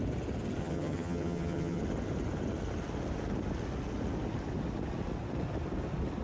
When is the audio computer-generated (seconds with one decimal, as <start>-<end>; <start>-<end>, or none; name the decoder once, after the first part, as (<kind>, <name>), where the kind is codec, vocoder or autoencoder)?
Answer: 0.6-1.8 (vocoder, HiFi-GAN)